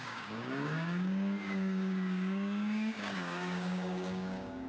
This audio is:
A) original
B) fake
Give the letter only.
B